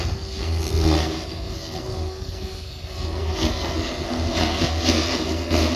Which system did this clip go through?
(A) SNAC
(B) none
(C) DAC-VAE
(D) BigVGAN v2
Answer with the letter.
A